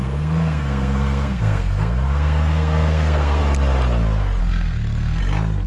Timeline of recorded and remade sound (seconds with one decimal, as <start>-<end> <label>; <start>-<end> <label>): 0.0-3.4 remade; 3.4-4.4 recorded; 4.4-5.2 remade; 5.2-5.7 recorded